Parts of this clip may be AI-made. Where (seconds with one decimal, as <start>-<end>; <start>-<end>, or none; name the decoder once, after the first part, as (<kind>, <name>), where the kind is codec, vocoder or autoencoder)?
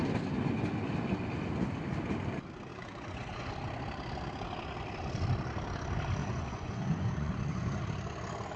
2.7-3.5 (vocoder, Vocos); 6.2-7.8